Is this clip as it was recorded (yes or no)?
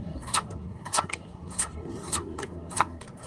no